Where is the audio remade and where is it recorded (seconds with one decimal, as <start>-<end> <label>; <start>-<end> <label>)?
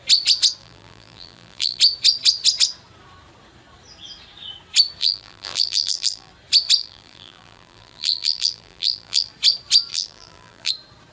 0.0-0.6 recorded; 0.6-1.8 remade; 1.8-5.0 recorded; 5.0-6.3 remade; 6.3-6.8 recorded; 6.8-9.3 remade; 9.3-9.9 recorded; 9.9-10.7 remade; 10.7-11.1 recorded